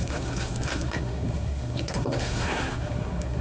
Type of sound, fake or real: fake